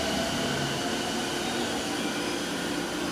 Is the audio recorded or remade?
recorded